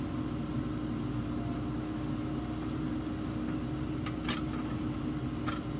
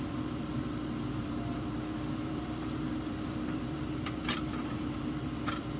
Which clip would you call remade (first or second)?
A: second